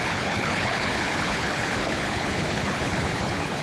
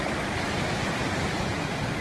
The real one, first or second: second